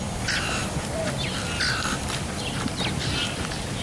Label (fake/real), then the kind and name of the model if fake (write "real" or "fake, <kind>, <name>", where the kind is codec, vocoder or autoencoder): real